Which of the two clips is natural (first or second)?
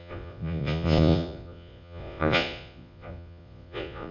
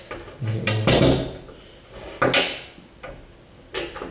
second